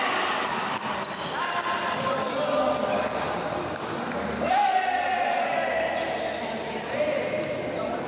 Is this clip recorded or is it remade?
recorded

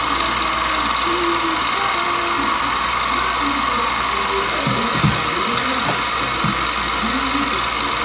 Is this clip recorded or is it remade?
recorded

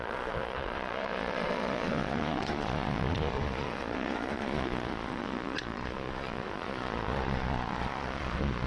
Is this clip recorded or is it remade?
remade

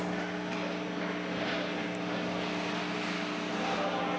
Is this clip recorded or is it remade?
recorded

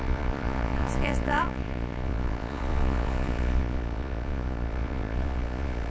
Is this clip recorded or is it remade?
remade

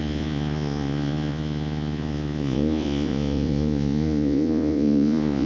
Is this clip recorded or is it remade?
remade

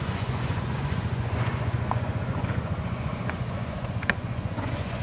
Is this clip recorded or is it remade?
remade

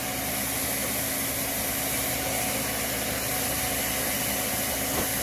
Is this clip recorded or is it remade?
recorded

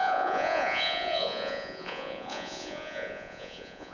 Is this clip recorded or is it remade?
remade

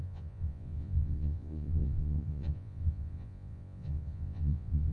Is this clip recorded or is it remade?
remade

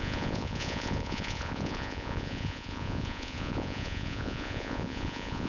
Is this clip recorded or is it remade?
remade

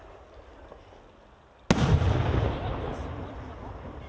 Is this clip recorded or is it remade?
recorded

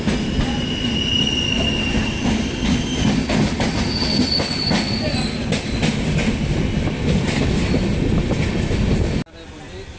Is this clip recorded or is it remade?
recorded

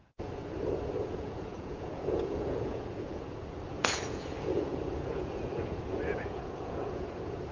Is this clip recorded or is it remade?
remade